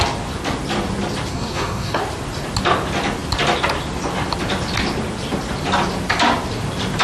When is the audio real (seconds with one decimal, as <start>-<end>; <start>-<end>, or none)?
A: 0.0-1.3; 2.0-7.0